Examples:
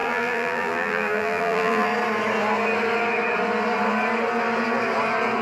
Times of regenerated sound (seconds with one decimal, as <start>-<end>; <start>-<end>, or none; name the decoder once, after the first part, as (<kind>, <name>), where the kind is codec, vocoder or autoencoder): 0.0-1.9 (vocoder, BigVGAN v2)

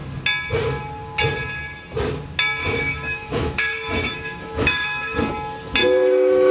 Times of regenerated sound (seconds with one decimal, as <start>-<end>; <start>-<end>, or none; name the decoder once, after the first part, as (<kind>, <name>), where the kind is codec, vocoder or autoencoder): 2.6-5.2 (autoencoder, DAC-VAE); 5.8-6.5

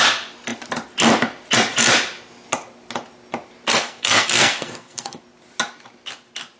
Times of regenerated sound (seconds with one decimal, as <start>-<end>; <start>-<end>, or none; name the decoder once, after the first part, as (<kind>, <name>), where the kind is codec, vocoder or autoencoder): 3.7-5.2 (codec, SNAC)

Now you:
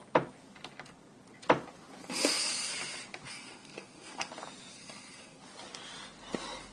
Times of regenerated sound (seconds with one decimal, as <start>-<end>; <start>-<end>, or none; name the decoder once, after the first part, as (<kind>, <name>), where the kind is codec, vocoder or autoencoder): 2.0-2.7 (codec, SNAC); 3.3-4.3; 4.7-5.4

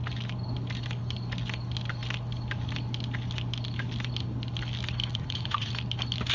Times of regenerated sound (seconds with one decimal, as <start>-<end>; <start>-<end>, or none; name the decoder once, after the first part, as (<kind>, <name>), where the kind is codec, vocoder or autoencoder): 5.1-5.7 (vocoder, Vocos)

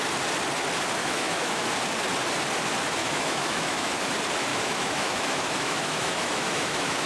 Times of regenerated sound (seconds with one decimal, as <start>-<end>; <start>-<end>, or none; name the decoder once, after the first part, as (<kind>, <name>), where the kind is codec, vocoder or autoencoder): 1.0-1.7 (autoencoder, DAC-VAE); 3.0-4.1; 4.5-7.1

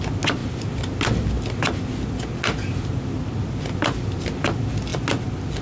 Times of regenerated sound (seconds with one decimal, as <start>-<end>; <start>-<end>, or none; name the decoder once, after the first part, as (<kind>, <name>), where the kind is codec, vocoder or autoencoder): none

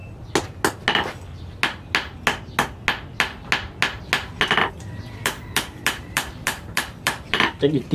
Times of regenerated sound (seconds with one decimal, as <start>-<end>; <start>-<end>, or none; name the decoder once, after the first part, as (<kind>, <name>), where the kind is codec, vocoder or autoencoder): 4.7-7.9 (vocoder, BigVGAN v2)